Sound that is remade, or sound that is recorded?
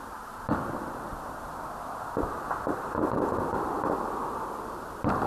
recorded